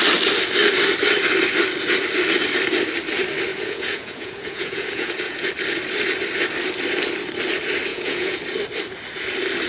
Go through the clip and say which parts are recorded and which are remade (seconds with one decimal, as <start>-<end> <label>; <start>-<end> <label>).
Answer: 0.0-3.5 recorded; 3.5-5.5 remade; 5.5-7.9 recorded; 7.9-8.4 remade; 8.4-9.7 recorded